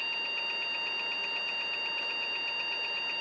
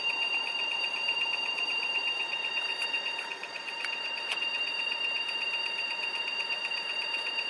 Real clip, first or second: first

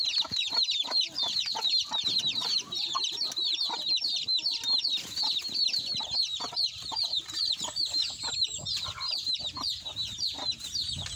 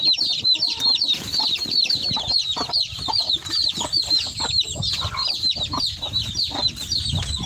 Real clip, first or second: first